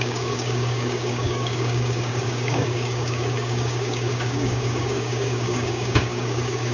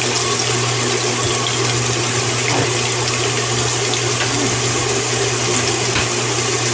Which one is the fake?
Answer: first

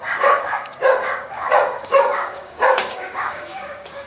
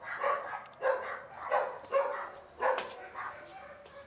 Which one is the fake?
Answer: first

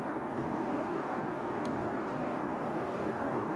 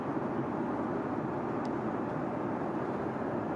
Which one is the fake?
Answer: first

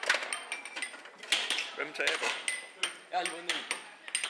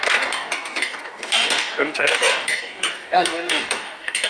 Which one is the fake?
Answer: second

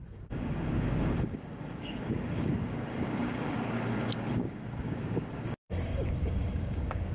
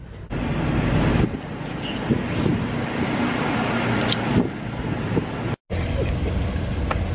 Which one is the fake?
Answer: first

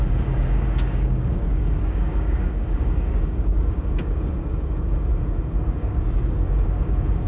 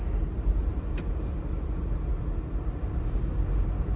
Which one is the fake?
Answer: first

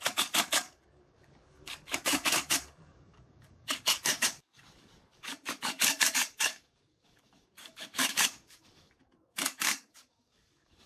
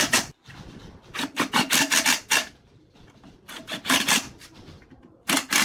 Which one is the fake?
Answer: first